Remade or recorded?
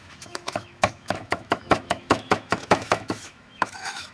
remade